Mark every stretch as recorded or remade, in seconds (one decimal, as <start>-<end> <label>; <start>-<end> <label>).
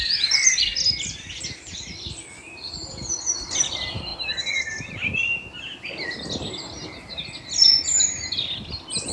0.0-2.4 recorded; 2.4-3.0 remade; 3.0-9.1 recorded